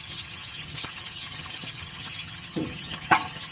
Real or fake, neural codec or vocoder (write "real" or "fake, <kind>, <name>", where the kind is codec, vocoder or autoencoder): fake, vocoder, HiFi-GAN